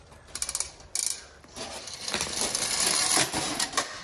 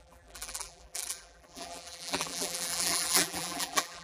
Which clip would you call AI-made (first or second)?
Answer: second